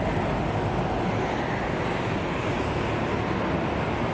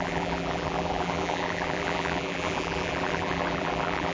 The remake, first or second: second